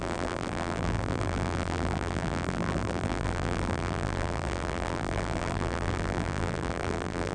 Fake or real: fake